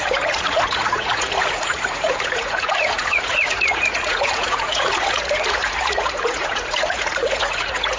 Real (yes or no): no